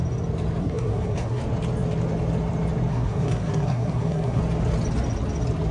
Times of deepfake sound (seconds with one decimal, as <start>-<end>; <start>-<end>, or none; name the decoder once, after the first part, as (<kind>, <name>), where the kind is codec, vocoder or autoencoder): 0.6-1.4 (codec, SNAC); 2.9-4.4